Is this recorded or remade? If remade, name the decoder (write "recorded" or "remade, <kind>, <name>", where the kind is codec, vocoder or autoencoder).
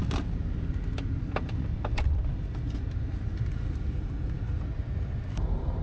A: recorded